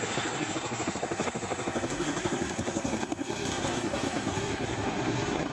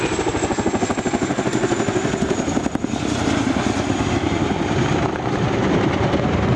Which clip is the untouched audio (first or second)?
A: second